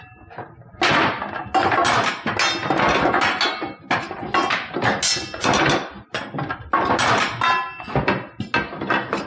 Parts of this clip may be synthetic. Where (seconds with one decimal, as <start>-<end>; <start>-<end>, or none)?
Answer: none